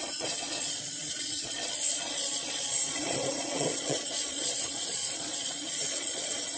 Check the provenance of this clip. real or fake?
fake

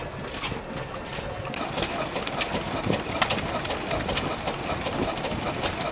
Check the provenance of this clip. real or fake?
real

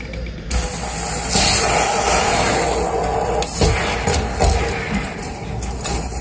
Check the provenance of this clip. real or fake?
real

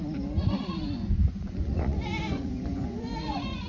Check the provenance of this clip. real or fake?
fake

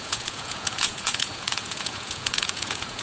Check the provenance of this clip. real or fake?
fake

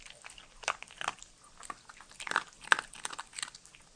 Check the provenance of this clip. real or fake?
real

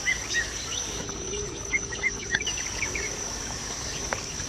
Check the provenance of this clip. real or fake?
fake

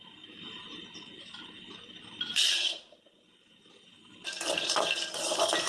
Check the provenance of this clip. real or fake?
real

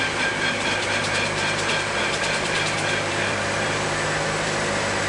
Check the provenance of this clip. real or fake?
fake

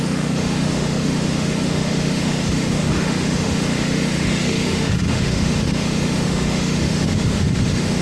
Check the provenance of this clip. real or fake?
fake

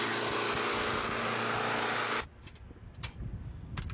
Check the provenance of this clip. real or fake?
real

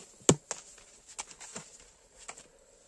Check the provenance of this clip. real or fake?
real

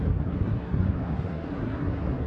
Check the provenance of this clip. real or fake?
fake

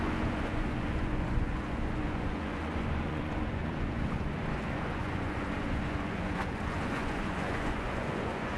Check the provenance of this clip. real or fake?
fake